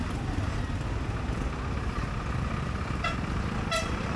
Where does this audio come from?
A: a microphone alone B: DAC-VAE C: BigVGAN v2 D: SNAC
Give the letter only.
A